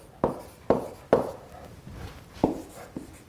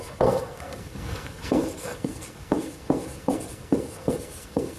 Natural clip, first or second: first